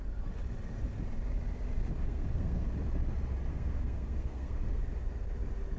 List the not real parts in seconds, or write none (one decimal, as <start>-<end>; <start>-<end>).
2.0-2.7; 3.5-4.8